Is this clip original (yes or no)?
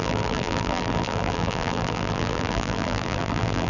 no